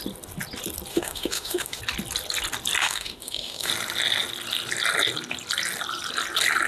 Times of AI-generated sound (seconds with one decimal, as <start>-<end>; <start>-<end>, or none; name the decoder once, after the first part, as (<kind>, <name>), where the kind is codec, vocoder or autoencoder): 0.9-1.8 (autoencoder, DAC-VAE); 2.8-3.7